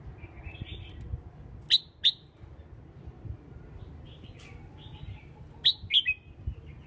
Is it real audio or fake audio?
real